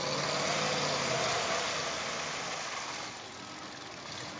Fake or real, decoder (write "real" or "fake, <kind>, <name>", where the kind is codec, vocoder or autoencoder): real